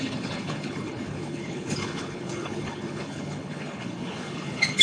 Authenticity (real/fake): fake